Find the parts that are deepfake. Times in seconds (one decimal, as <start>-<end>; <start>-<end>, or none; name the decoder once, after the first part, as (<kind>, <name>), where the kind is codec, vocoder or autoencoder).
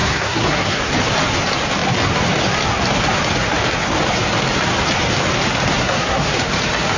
0.0-0.8 (codec, SNAC); 5.8-6.4